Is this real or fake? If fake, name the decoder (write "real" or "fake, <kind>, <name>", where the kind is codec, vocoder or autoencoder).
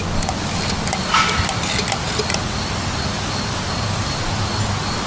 real